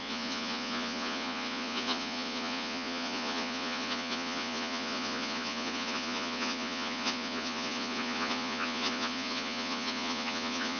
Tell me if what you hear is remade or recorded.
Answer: remade